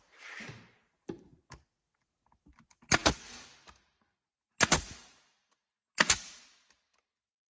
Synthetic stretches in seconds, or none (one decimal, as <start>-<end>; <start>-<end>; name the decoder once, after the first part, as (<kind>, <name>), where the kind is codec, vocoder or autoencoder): none